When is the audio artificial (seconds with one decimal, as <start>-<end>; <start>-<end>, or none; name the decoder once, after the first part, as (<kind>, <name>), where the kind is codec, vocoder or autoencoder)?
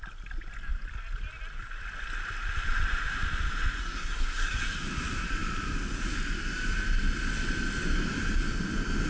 3.8-4.6 (codec, SNAC)